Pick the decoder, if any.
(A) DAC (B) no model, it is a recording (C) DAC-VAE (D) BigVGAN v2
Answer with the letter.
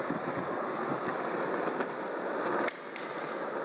B